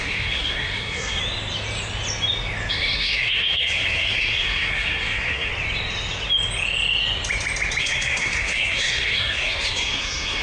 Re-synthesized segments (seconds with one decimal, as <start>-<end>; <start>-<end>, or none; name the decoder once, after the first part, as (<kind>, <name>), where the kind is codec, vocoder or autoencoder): 0.0-1.2 (codec, SNAC); 2.7-5.5; 7.8-10.4